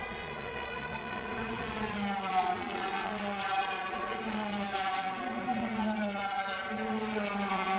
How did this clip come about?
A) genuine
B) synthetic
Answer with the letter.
B